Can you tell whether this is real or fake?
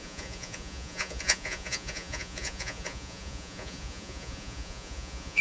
fake